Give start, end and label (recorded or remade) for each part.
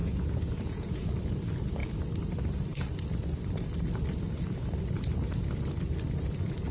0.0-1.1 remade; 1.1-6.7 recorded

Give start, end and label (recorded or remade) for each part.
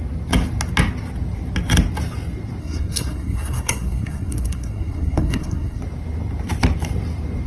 0.0-2.6 recorded; 2.6-5.8 remade; 5.8-7.5 recorded